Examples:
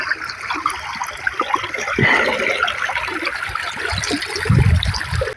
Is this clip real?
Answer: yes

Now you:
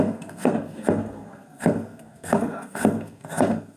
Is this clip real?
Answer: no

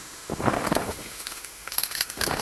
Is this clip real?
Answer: no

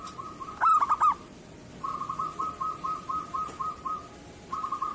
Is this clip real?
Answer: yes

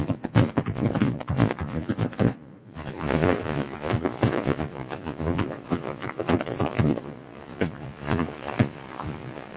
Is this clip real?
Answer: no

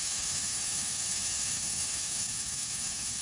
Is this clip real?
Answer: no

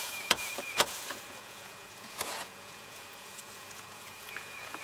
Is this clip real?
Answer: no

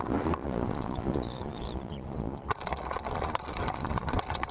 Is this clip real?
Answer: no